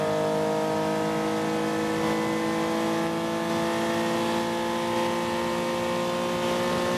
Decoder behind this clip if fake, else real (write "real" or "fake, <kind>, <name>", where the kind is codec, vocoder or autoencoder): real